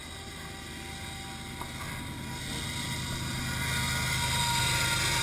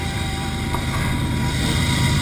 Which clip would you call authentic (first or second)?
first